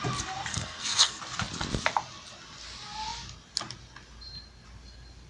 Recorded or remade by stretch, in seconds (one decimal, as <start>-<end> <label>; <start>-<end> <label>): 0.0-0.5 recorded; 0.5-1.2 remade; 1.2-5.3 recorded